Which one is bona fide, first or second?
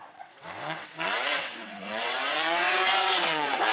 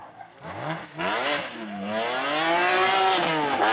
second